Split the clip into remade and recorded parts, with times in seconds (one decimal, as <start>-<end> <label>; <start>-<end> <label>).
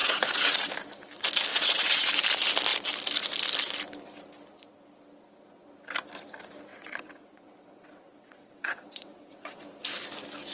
0.0-0.7 remade; 0.7-1.5 recorded; 1.5-2.1 remade; 2.1-6.7 recorded; 6.7-9.6 remade; 9.6-10.5 recorded